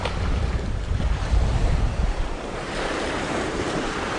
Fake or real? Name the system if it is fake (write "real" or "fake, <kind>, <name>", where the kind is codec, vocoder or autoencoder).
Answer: fake, vocoder, BigVGAN v2